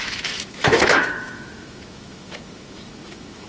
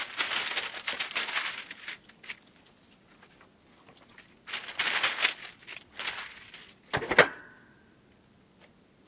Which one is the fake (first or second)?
first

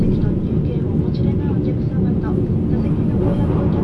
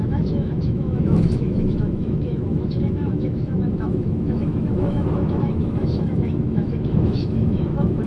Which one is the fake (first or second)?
second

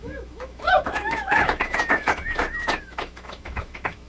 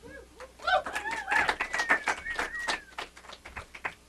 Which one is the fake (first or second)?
first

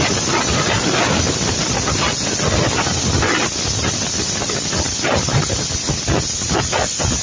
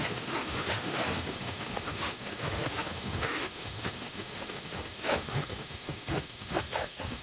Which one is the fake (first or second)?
second